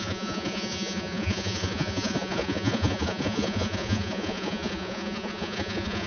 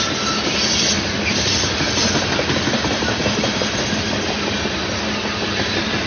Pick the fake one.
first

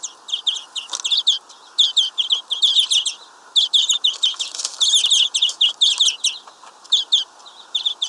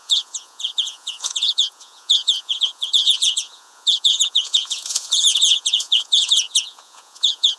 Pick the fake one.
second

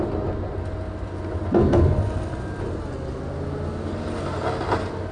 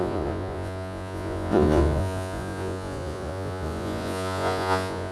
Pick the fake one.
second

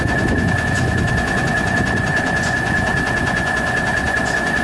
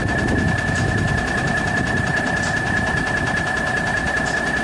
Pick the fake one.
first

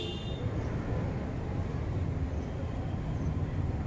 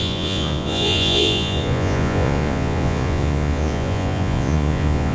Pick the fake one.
second